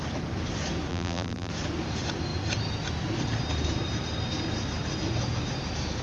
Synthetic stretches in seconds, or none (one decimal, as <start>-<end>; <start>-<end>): 0.9-1.5